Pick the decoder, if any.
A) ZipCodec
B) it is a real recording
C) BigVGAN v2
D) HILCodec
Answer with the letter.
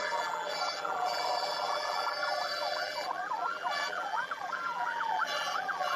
C